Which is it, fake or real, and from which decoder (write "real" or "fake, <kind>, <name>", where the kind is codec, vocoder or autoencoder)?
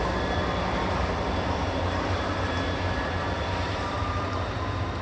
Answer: fake, vocoder, BigVGAN v2